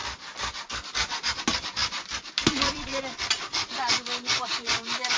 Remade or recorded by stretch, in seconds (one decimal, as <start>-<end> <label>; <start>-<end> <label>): 0.0-1.4 recorded; 1.4-2.9 remade; 2.9-4.7 recorded; 4.7-5.2 remade